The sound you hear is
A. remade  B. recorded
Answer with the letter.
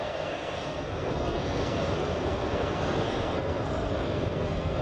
A